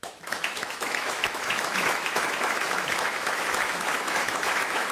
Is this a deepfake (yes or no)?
yes